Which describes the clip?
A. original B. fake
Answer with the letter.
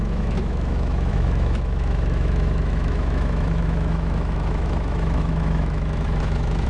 B